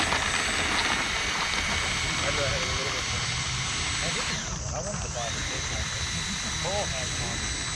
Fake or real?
real